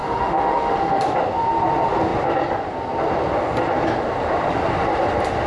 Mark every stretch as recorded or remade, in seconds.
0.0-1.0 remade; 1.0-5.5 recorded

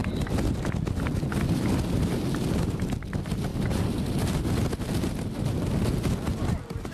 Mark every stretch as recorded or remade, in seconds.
0.0-6.9 recorded

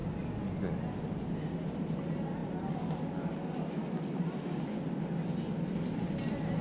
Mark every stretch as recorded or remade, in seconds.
0.0-6.6 recorded

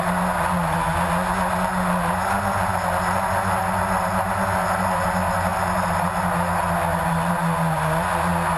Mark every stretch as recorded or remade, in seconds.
0.0-8.6 recorded

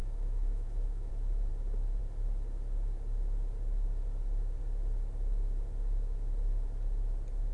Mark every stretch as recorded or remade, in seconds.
0.0-1.1 remade; 1.1-7.5 recorded